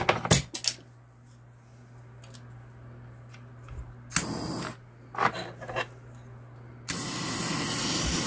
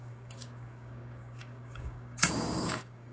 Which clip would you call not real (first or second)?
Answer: second